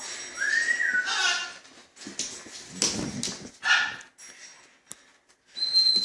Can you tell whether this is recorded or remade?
recorded